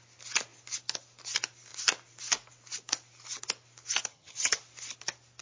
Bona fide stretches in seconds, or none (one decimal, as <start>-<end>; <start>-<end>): 0.0-4.1; 4.6-5.4